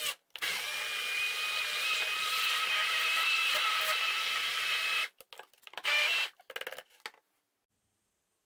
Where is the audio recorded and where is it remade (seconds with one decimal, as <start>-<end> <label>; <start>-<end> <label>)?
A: 0.0-8.5 recorded